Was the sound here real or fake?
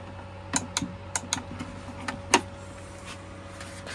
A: real